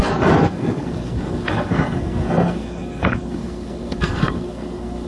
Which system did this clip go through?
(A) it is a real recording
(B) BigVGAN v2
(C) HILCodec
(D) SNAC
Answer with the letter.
D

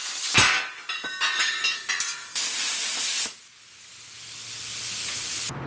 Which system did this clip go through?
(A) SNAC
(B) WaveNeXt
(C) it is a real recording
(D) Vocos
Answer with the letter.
C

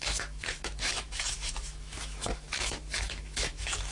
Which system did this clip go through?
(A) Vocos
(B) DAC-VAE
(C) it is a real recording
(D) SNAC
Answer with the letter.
B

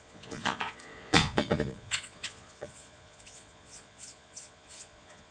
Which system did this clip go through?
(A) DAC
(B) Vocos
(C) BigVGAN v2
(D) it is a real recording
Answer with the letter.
B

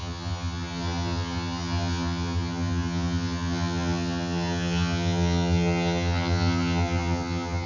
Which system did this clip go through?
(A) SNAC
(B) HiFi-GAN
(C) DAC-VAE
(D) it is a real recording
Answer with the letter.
B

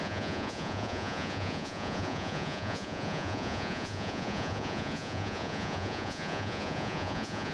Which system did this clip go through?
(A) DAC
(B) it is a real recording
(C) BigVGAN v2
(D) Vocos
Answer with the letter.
D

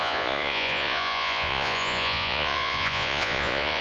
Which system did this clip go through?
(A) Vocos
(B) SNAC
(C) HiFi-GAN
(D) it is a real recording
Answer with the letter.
A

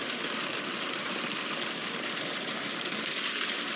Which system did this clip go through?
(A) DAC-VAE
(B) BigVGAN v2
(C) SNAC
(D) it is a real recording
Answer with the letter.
B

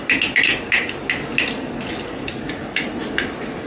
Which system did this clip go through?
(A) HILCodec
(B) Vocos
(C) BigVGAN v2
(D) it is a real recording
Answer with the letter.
D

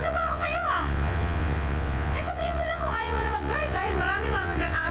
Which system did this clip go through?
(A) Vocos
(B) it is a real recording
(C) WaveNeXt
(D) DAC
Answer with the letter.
C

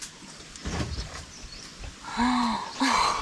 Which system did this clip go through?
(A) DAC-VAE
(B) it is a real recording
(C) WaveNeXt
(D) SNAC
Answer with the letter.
B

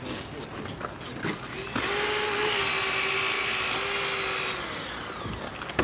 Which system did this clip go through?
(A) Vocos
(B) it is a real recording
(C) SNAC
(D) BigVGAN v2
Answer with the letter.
B